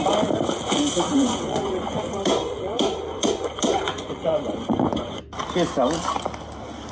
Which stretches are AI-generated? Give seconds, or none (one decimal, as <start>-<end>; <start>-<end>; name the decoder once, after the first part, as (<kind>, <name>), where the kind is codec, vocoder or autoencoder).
1.1-5.2 (vocoder, Vocos)